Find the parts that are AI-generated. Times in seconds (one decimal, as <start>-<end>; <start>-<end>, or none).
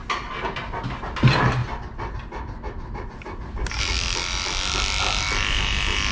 none